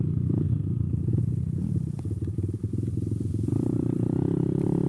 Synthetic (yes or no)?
no